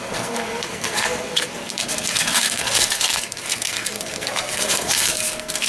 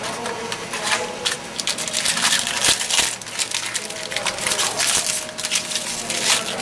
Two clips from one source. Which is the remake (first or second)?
first